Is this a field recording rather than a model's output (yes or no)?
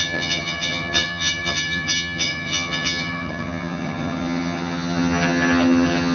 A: no